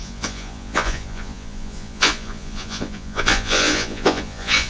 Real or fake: fake